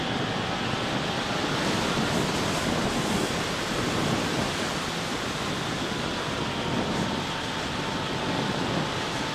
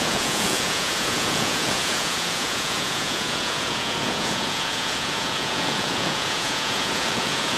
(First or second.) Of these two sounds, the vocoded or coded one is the second